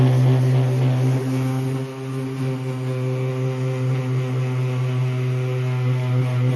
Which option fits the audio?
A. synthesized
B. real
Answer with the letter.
B